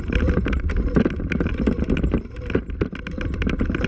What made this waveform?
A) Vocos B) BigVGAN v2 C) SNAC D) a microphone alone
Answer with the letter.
D